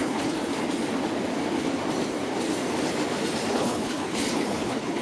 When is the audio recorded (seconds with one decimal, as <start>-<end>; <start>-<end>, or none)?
0.5-3.5